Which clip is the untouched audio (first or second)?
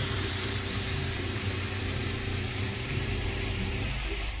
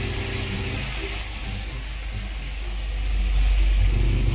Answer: second